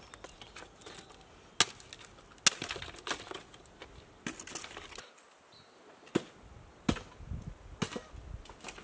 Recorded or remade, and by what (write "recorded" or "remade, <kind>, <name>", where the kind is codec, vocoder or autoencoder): recorded